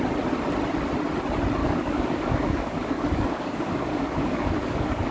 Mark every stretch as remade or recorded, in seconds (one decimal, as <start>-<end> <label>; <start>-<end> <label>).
0.0-1.6 recorded; 1.6-5.1 remade